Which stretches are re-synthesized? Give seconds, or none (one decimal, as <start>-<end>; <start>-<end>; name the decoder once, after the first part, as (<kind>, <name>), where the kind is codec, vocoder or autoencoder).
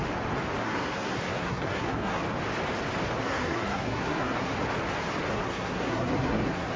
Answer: 0.6-2.2 (codec, SNAC); 3.2-4.5; 5.3-6.8